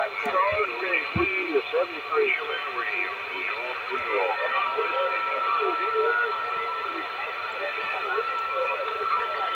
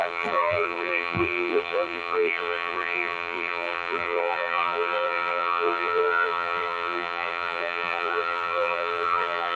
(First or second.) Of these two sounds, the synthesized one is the second